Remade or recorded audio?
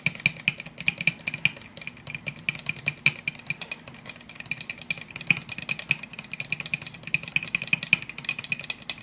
recorded